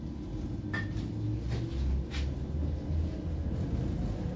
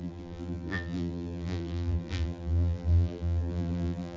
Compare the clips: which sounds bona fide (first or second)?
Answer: first